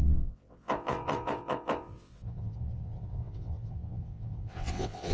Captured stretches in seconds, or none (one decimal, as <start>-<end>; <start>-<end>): none